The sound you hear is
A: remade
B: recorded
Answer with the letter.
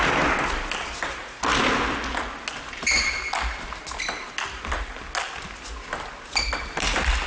B